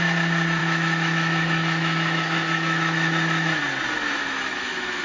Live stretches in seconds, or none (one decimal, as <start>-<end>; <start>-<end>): 0.0-0.6; 3.6-4.2